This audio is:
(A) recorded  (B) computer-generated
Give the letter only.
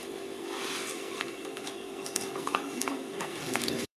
B